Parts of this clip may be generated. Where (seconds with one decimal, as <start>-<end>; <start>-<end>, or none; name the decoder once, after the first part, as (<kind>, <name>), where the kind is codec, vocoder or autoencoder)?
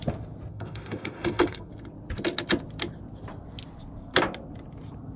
0.5-1.7 (codec, SNAC)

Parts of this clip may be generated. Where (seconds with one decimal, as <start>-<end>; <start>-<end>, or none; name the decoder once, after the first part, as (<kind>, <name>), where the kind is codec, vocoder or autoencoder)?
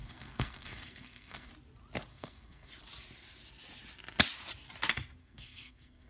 0.0-1.5 (codec, SNAC); 2.1-2.7; 5.2-6.1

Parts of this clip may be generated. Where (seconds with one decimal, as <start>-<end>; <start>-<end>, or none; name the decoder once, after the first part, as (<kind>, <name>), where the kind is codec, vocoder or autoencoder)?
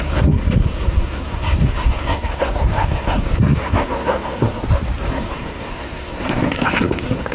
0.0-4.6 (codec, SNAC); 5.1-7.3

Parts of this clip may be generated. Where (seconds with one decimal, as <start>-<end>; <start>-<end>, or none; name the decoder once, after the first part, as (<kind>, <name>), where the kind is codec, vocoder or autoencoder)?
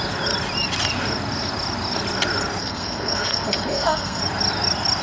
2.6-4.2 (codec, SNAC)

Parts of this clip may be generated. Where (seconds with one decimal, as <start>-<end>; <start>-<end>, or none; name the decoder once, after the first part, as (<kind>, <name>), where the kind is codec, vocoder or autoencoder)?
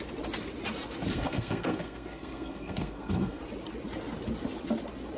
1.1-3.4 (codec, SNAC)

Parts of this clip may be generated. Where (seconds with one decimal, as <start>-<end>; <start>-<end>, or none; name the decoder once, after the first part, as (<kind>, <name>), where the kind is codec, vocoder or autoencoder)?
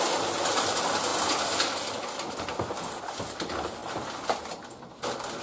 none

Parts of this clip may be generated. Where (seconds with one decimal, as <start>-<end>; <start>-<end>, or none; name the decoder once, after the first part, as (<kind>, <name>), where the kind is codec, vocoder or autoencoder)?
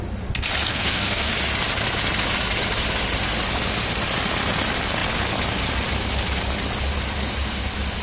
0.7-1.3 (codec, SNAC)